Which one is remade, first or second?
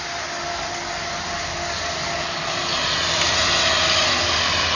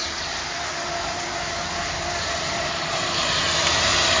second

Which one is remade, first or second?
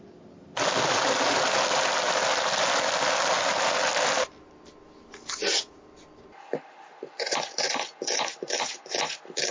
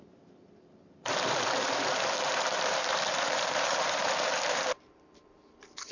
second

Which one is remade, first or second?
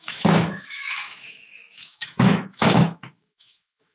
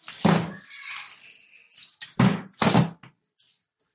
first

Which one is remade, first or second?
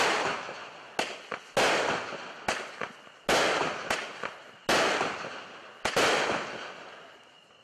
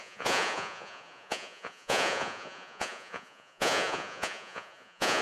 second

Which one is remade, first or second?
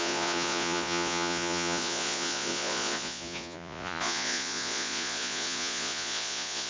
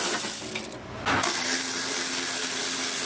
first